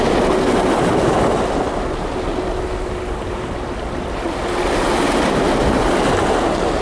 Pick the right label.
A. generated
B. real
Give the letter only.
B